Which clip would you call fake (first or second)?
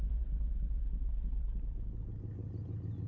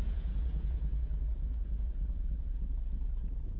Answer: second